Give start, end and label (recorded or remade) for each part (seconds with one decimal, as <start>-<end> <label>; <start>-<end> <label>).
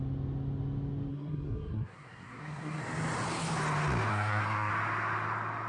0.0-1.1 recorded; 1.1-2.8 remade; 2.8-4.1 recorded; 4.1-4.7 remade; 4.7-5.7 recorded